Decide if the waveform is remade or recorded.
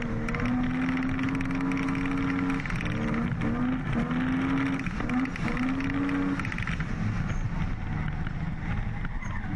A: recorded